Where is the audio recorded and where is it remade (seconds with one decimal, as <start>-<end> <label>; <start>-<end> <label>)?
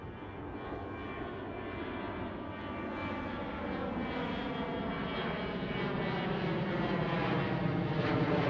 0.0-8.5 recorded